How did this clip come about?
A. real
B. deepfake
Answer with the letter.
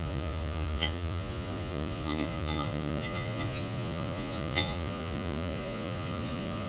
B